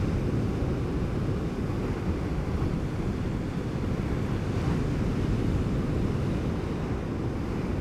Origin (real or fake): real